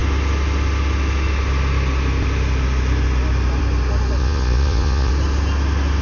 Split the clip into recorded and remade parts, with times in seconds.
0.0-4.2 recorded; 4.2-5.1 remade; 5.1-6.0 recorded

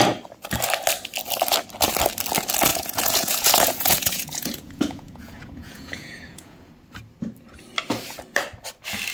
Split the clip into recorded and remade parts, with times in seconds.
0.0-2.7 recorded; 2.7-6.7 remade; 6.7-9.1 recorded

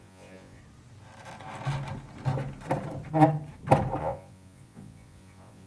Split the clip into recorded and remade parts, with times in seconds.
0.0-0.6 remade; 0.6-4.0 recorded; 4.0-5.7 remade

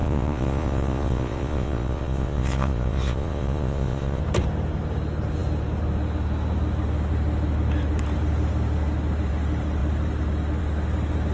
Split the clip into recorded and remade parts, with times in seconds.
0.0-4.2 remade; 4.2-11.3 recorded

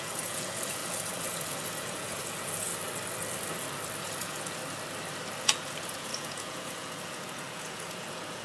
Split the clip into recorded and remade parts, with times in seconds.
0.0-2.7 remade; 2.7-4.0 recorded; 4.0-4.6 remade; 4.6-5.4 recorded; 5.4-8.4 remade

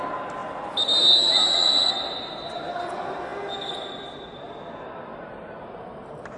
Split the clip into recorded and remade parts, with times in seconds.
0.0-6.4 recorded

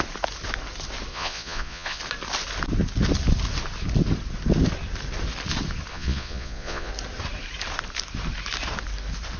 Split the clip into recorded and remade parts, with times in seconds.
0.0-1.1 recorded; 1.1-2.0 remade; 2.0-5.9 recorded; 5.9-6.9 remade; 6.9-9.4 recorded